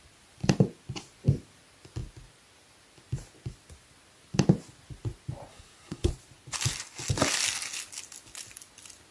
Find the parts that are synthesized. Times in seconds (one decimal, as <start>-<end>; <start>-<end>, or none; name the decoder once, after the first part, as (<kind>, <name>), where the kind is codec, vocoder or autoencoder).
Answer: 5.5-6.1 (codec, SNAC)

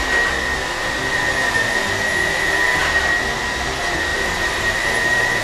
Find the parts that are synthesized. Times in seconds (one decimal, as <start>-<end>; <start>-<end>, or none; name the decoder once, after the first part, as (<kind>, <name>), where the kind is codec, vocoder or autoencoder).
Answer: 4.1-5.4 (vocoder, BigVGAN v2)